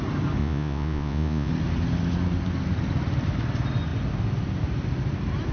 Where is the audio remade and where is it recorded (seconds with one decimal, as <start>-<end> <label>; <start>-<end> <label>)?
0.0-0.4 recorded; 0.4-1.5 remade; 1.5-5.5 recorded